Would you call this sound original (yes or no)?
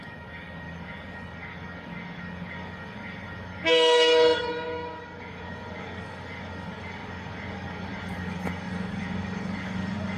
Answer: no